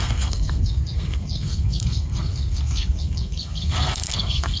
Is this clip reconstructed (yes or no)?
yes